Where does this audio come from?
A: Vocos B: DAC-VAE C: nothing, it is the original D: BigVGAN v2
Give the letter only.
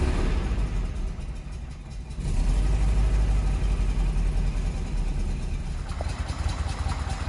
C